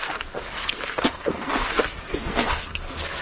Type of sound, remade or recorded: remade